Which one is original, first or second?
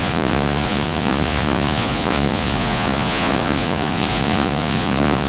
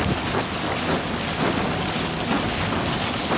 second